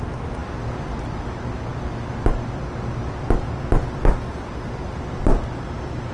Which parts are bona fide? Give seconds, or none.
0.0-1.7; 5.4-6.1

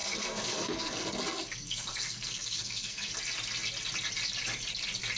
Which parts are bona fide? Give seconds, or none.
3.1-5.2

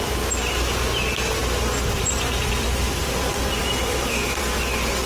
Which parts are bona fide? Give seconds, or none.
0.0-3.6; 4.4-5.1

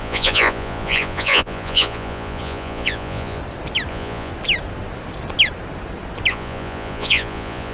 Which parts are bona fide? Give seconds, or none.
3.4-3.9; 4.3-6.3

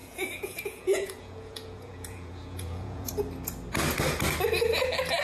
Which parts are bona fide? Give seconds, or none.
3.1-5.2

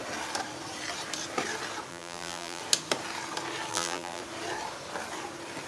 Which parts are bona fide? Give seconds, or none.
0.0-1.9; 2.6-3.7; 4.2-5.7